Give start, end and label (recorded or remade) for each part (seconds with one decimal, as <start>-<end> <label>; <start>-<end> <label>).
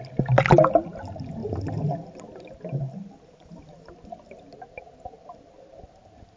0.0-6.4 recorded